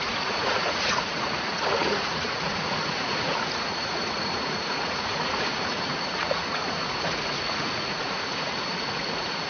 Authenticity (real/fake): fake